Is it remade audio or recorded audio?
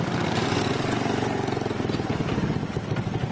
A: recorded